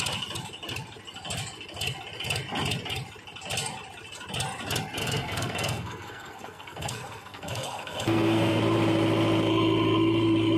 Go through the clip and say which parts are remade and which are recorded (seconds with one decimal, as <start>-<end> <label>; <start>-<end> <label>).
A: 0.0-5.0 recorded; 5.0-8.6 remade; 8.6-10.6 recorded